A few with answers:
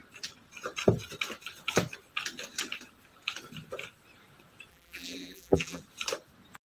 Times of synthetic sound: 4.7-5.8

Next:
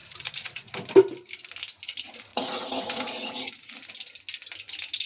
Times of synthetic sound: 0.0-0.7; 2.3-3.5

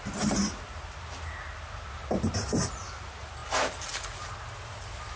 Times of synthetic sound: none